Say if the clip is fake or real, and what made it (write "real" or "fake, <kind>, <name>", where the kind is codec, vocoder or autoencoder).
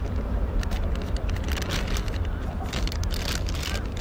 real